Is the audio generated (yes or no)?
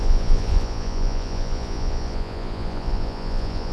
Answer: yes